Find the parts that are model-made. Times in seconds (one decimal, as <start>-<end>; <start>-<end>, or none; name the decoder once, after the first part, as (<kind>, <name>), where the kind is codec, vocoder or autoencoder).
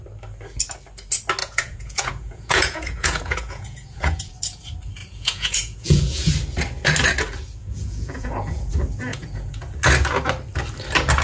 1.4-4.3 (vocoder, Vocos); 5.0-6.3; 7.6-8.7; 9.1-9.6